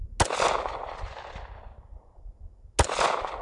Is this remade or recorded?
recorded